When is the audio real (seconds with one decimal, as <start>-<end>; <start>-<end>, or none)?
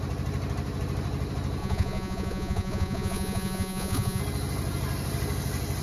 0.0-1.6; 4.2-5.8